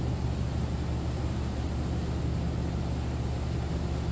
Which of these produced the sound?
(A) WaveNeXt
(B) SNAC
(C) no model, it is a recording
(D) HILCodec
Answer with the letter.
C